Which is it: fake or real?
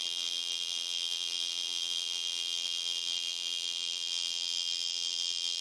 fake